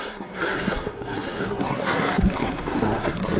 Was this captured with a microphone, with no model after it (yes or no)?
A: no